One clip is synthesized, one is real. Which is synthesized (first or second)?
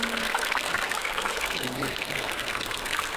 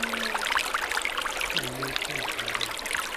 first